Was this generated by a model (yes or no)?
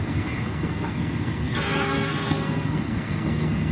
yes